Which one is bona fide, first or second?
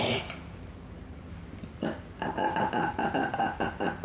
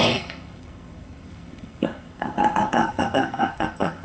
first